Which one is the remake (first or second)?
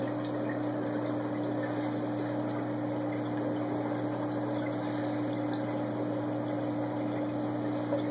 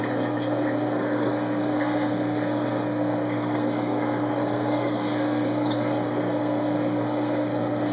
second